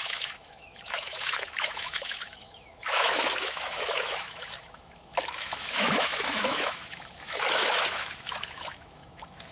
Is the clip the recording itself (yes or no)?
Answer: no